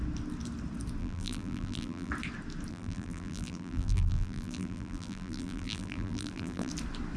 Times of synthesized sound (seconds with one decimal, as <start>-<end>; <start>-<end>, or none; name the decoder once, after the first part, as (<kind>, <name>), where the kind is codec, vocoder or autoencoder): 1.0-2.1 (vocoder, BigVGAN v2); 2.7-6.7